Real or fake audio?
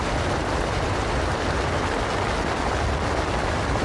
real